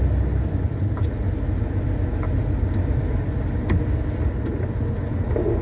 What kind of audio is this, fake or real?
real